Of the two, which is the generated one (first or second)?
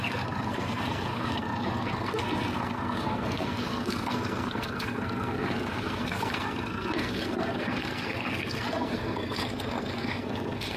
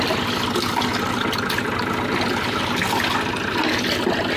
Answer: first